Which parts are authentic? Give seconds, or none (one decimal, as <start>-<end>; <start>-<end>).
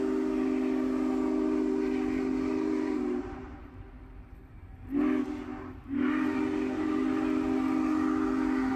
0.0-8.8